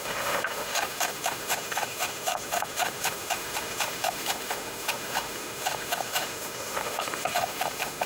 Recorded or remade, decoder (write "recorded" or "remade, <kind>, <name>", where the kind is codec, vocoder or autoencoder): remade, autoencoder, DAC-VAE